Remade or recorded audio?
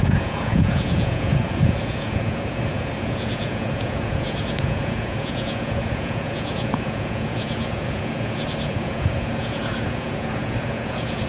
remade